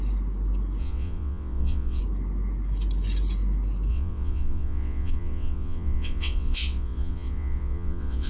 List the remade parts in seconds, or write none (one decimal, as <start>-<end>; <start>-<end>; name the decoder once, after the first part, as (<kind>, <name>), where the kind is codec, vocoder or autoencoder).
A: 0.8-2.0 (vocoder, WaveNeXt); 3.9-8.3